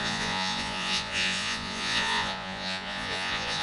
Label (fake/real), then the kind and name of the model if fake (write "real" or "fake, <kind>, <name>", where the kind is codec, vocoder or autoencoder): fake, vocoder, Vocos